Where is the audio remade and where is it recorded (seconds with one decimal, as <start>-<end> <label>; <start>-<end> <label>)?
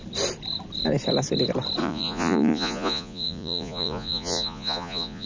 0.0-1.8 recorded; 1.8-5.3 remade